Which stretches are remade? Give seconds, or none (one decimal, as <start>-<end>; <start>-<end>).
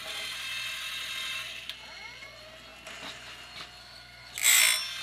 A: 3.8-4.3